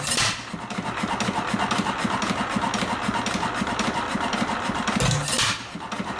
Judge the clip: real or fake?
real